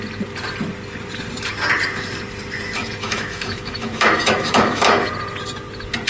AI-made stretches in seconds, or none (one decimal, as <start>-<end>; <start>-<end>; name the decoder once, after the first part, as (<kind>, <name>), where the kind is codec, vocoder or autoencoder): 2.8-5.1 (autoencoder, DAC-VAE)